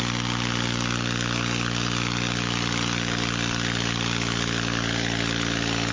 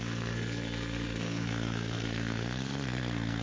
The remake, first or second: second